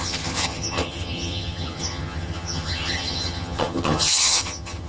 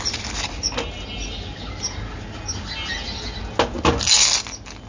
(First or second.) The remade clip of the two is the first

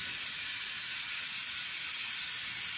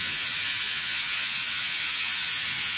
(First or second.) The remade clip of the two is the second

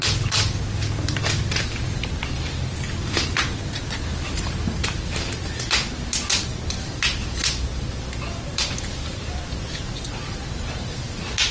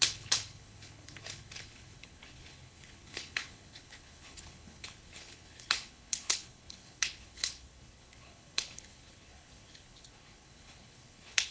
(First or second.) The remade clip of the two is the second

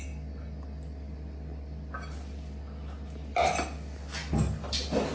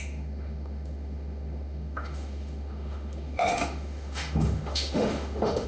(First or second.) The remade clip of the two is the second